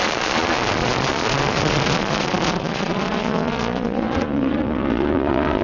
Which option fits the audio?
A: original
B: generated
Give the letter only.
B